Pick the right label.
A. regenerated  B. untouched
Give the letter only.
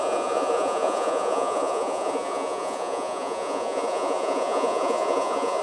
A